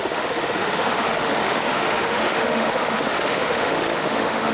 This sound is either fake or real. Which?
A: fake